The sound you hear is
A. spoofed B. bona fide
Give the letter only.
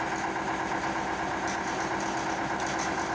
B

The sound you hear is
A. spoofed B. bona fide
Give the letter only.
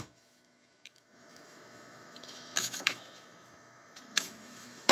A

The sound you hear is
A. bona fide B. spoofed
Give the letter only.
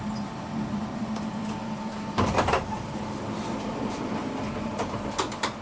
B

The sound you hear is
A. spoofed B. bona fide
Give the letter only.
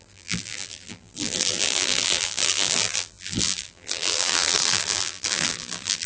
A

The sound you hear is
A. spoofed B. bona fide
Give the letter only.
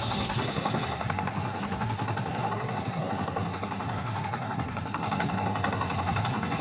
A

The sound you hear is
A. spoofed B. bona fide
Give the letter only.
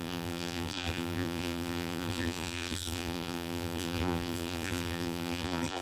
A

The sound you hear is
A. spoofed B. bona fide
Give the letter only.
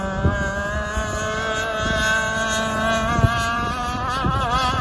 B